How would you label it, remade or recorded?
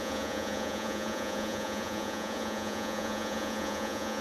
remade